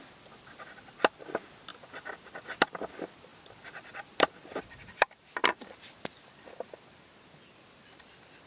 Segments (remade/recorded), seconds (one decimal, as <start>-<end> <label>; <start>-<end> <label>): 0.0-3.3 recorded; 3.3-8.5 remade